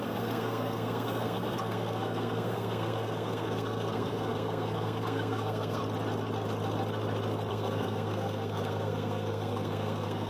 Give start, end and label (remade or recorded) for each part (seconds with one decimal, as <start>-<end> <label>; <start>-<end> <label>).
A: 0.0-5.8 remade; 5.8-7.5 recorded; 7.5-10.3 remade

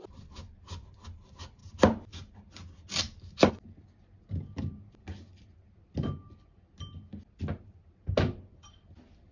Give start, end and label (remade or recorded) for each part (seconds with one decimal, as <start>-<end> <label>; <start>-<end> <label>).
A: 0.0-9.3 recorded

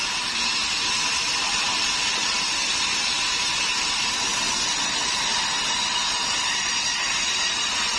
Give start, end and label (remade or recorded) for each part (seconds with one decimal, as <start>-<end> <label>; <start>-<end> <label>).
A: 0.0-8.0 recorded

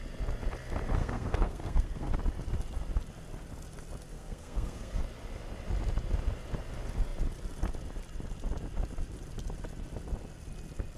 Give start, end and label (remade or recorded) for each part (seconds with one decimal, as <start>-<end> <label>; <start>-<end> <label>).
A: 0.0-1.0 recorded; 1.0-2.1 remade; 2.1-4.1 recorded; 4.1-5.0 remade; 5.0-11.0 recorded

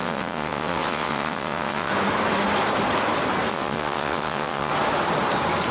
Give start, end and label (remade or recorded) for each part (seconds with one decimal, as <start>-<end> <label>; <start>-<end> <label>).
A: 0.0-1.9 remade; 1.9-3.5 recorded; 3.5-4.7 remade; 4.7-5.7 recorded

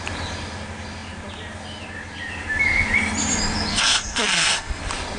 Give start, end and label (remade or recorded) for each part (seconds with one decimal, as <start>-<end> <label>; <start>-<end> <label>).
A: 0.0-3.7 recorded; 3.7-4.8 remade; 4.8-5.2 recorded

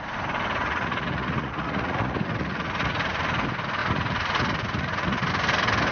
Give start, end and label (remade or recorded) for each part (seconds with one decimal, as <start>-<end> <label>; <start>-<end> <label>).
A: 0.0-0.6 recorded; 0.6-3.2 remade; 3.2-3.8 recorded; 3.8-5.3 remade; 5.3-5.9 recorded

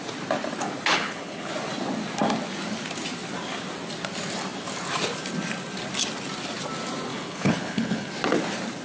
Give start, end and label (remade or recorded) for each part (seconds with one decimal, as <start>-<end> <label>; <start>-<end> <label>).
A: 0.0-0.9 recorded; 0.9-1.5 remade; 1.5-7.1 recorded; 7.1-8.1 remade; 8.1-8.8 recorded